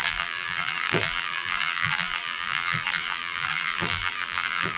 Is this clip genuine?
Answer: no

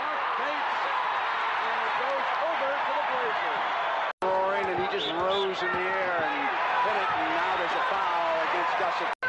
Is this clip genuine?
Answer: yes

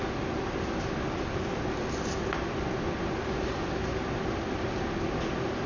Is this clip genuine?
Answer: yes